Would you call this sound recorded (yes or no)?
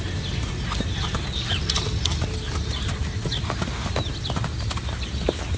yes